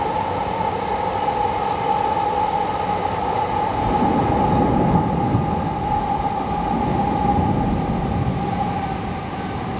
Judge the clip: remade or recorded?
recorded